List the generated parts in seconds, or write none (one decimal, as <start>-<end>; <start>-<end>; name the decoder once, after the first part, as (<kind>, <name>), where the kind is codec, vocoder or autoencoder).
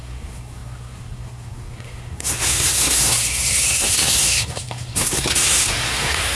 0.0-6.3 (codec, SNAC)